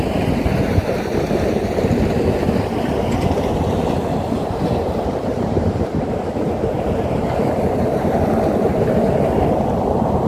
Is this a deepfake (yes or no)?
yes